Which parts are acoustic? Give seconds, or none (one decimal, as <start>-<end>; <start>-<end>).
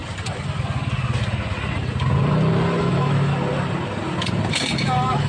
0.0-2.8; 3.3-4.5